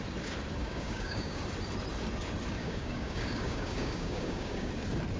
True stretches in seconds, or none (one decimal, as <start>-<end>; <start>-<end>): 0.0-0.6; 1.4-2.6; 4.7-5.2